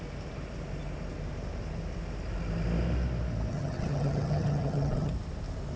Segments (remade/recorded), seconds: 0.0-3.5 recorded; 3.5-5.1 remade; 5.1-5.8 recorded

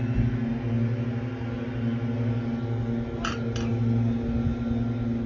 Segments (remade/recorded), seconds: 0.0-5.3 recorded

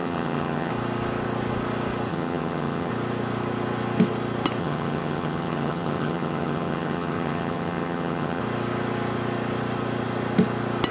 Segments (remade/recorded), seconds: 0.0-0.7 remade; 0.7-2.1 recorded; 2.1-2.9 remade; 2.9-4.6 recorded; 4.6-8.4 remade; 8.4-10.9 recorded

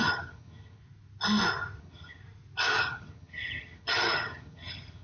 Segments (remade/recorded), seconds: 0.0-0.8 remade; 0.8-1.8 recorded; 1.8-2.2 remade; 2.2-2.8 recorded; 2.8-5.0 remade

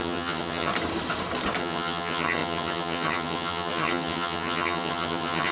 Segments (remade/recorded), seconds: 0.0-0.7 remade; 0.7-1.6 recorded; 1.6-5.5 remade

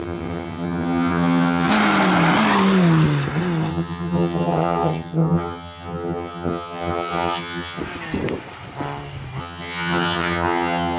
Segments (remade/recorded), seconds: 0.0-1.7 remade; 1.7-3.7 recorded; 3.7-7.8 remade; 7.8-9.4 recorded; 9.4-11.0 remade